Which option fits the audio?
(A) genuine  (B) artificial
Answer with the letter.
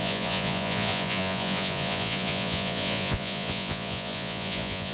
B